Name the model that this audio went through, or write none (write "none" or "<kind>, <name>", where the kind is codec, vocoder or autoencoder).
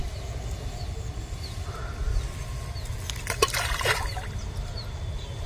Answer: none